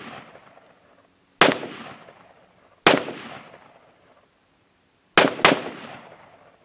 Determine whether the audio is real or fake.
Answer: real